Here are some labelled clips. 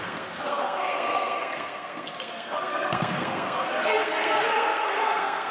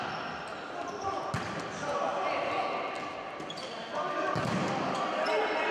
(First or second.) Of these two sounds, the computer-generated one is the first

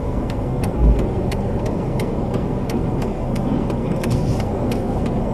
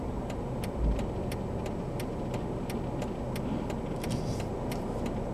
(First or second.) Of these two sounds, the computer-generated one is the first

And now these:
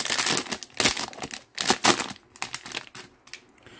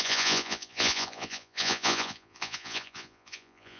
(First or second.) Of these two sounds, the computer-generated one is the second